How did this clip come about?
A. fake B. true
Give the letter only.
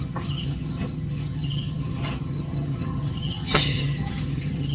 A